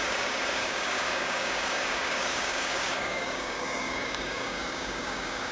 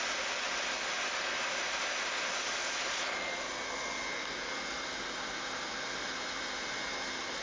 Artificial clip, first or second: first